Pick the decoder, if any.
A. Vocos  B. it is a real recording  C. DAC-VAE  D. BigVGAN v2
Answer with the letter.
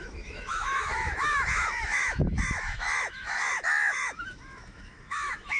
C